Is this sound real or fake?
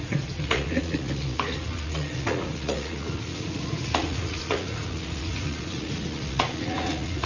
fake